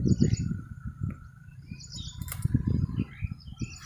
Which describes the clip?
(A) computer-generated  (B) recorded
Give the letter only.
B